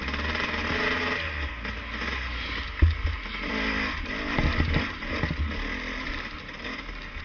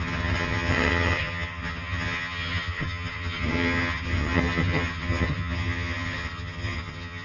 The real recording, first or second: first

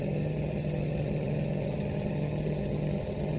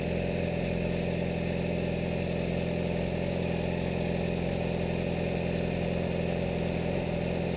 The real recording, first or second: second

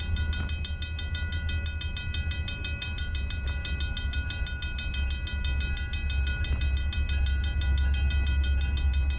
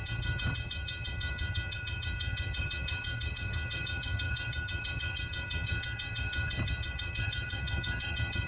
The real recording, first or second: first